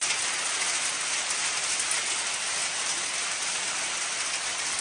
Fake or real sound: real